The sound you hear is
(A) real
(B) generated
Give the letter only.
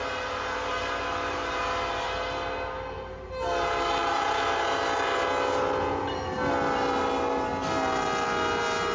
A